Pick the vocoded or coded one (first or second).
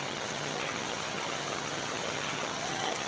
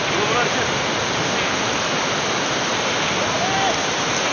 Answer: first